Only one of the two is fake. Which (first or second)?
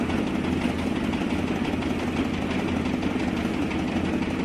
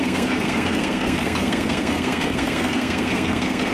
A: second